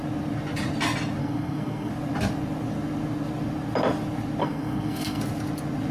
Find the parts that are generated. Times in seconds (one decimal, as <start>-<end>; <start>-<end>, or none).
1.2-1.9; 4.4-5.2